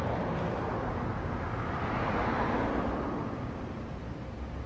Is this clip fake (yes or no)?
no